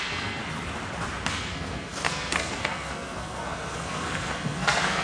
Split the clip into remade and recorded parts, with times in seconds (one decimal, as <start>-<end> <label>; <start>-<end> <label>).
0.0-0.4 remade; 0.4-1.3 recorded; 1.3-5.0 remade